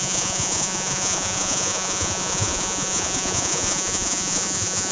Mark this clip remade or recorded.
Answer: remade